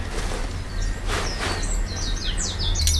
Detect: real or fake real